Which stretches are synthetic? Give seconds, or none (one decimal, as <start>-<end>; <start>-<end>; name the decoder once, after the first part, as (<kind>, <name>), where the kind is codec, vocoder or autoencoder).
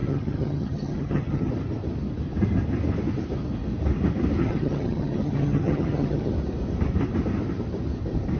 0.0-1.5 (vocoder, HiFi-GAN); 4.4-6.3